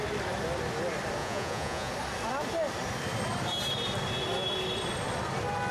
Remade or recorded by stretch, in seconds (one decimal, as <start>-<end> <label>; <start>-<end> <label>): 0.0-1.2 recorded; 1.2-1.9 remade; 1.9-5.7 recorded

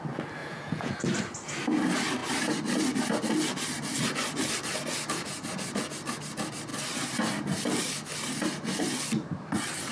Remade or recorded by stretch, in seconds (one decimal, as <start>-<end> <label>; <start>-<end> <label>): 0.0-0.4 recorded; 0.4-0.9 remade; 0.9-9.9 recorded

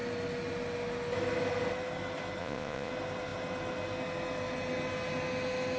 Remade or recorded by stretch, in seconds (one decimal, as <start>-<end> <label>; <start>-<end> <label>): 0.0-2.4 recorded; 2.4-2.9 remade; 2.9-5.8 recorded

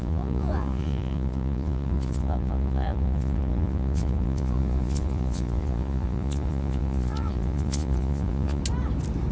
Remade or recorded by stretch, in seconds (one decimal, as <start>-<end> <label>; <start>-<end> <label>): 0.0-8.6 remade; 8.6-9.3 recorded

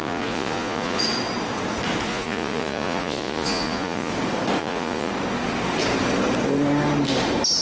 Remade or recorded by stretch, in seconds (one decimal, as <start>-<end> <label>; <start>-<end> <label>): 0.0-1.0 remade; 1.0-2.1 recorded; 2.1-4.1 remade; 4.1-4.6 recorded; 4.6-5.1 remade; 5.1-7.6 recorded